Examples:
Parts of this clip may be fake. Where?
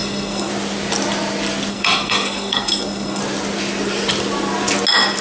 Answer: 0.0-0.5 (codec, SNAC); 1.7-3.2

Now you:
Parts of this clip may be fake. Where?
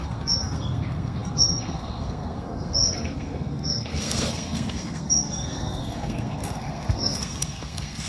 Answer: 0.0-8.1 (codec, SNAC)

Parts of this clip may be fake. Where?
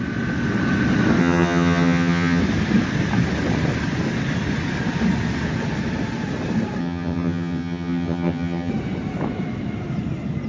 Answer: 1.2-2.4 (vocoder, HiFi-GAN); 6.8-8.7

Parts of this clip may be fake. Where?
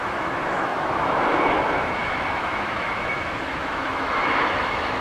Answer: 0.0-5.0 (autoencoder, DAC-VAE)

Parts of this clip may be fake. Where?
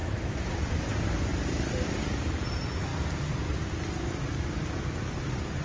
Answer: 0.0-0.6 (autoencoder, DAC-VAE)